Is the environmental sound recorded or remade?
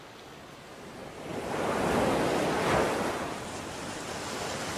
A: recorded